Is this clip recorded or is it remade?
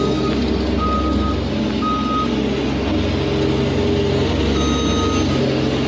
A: recorded